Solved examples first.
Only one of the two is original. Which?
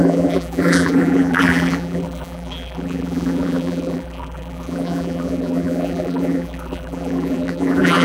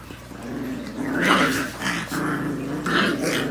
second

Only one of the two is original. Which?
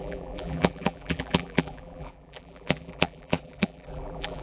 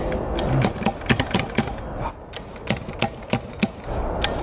second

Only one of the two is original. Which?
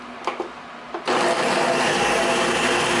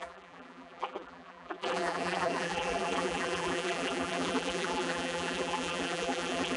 first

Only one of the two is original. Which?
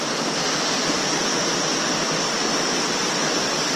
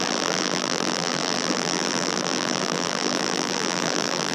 first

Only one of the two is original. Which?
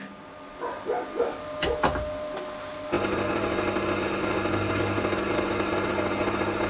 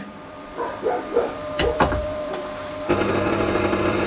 first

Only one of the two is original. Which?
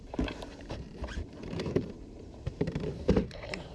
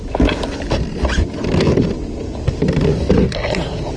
second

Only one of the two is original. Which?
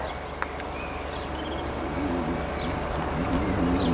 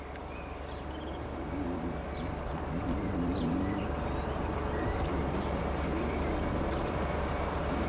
first